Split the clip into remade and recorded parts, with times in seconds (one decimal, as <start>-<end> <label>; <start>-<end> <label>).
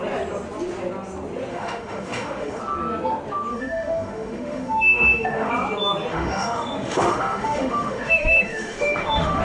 0.0-1.5 recorded; 1.5-2.6 remade; 2.6-3.5 recorded; 3.5-5.5 remade; 5.5-6.1 recorded; 6.1-9.4 remade